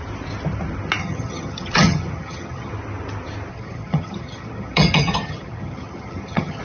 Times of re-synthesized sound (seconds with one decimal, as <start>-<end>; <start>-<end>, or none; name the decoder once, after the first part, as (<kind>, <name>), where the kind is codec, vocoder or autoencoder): 1.0-2.7 (vocoder, HiFi-GAN); 3.5-6.6